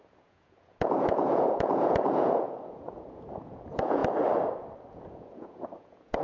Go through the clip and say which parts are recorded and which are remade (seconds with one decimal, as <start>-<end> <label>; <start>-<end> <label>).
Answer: 0.0-4.0 remade; 4.0-4.9 recorded; 4.9-6.2 remade